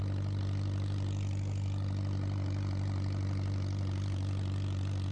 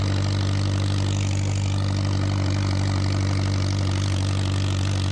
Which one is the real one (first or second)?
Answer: second